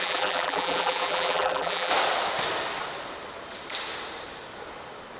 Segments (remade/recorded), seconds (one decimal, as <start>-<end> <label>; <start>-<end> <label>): 0.0-1.9 remade; 1.9-5.2 recorded